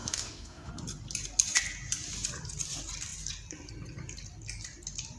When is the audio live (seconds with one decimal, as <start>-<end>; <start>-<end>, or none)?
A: 0.7-5.2